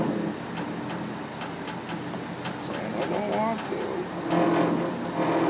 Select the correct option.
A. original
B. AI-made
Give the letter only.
A